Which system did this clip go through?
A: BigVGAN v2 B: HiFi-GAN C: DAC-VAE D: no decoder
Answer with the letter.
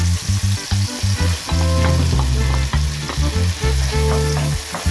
D